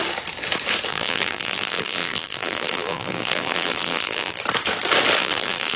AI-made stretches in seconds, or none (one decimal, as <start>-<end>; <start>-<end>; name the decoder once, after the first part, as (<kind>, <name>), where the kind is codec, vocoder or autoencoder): 0.9-4.4 (vocoder, BigVGAN v2); 5.2-5.8